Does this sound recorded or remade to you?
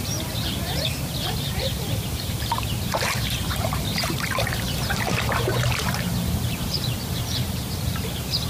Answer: remade